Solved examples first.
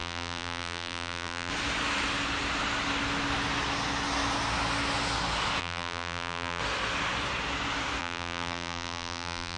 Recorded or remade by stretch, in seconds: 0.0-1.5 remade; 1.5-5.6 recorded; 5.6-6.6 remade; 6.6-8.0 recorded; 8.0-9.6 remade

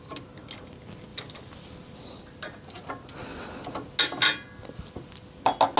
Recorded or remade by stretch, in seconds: 0.0-5.8 recorded

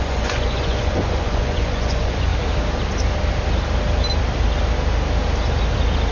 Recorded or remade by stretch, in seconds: 0.0-2.3 remade; 2.3-6.1 recorded

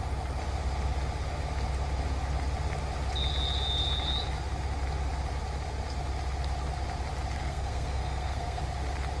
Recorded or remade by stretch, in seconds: 0.0-7.4 recorded; 7.4-8.6 remade; 8.6-9.2 recorded